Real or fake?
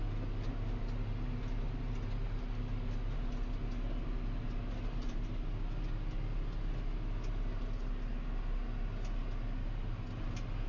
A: real